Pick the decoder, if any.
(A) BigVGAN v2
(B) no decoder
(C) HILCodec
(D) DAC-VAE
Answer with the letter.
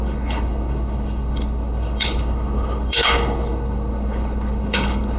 C